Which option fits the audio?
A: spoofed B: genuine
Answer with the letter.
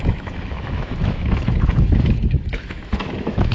A